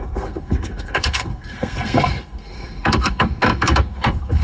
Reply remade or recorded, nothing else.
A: remade